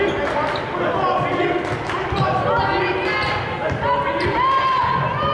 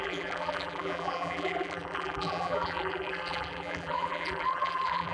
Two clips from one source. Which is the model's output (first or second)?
second